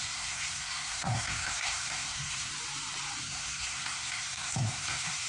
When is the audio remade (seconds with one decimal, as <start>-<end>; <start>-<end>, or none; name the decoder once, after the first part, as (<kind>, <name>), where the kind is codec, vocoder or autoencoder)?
0.0-2.5 (codec, SNAC); 3.2-5.3